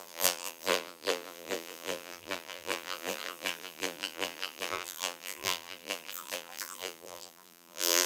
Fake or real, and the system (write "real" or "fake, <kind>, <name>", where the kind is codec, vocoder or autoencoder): fake, vocoder, BigVGAN v2